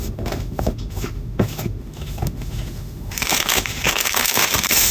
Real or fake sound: fake